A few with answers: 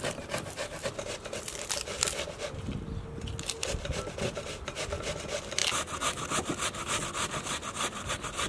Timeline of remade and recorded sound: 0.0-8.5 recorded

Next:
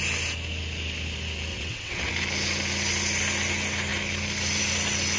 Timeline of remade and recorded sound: 0.0-1.5 recorded; 1.5-2.1 remade; 2.1-5.2 recorded

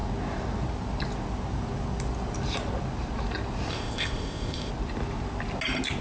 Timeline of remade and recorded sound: 0.0-3.7 recorded; 3.7-4.7 remade; 4.7-6.0 recorded

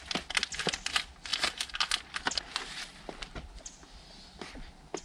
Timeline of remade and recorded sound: 0.0-5.0 recorded

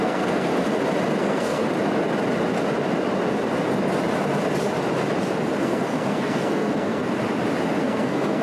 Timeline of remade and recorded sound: 0.0-0.5 remade; 0.5-1.2 recorded; 1.2-1.6 remade; 1.6-5.6 recorded; 5.6-7.0 remade; 7.0-7.8 recorded; 7.8-8.4 remade

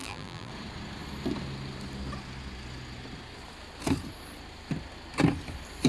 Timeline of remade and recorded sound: 0.0-0.5 remade; 0.5-5.9 recorded

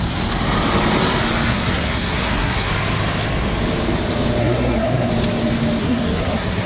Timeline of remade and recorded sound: 0.0-1.5 recorded; 1.5-2.7 remade; 2.7-4.4 recorded; 4.4-5.1 remade; 5.1-5.8 recorded; 5.8-6.7 remade